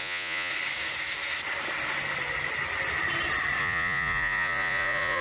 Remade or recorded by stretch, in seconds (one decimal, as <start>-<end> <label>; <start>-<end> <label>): 0.0-0.5 remade; 0.5-3.6 recorded; 3.6-5.2 remade